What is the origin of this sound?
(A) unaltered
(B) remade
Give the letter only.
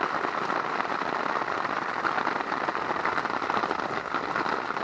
A